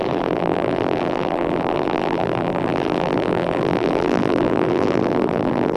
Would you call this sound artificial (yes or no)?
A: yes